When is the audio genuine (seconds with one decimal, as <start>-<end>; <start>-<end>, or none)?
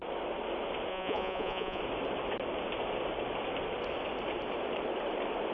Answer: 0.0-0.9; 1.8-5.5